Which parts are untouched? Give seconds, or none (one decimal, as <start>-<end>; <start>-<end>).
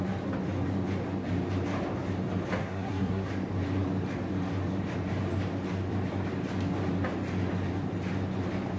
0.0-2.6; 3.3-8.8